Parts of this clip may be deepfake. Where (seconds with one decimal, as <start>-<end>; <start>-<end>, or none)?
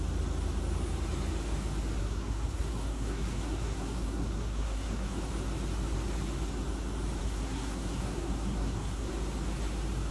2.0-5.3; 7.2-9.1